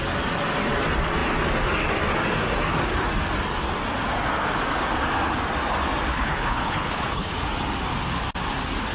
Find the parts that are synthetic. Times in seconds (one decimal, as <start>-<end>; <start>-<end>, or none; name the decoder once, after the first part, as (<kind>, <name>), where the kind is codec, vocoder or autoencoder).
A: 6.1-7.3 (codec, HILCodec)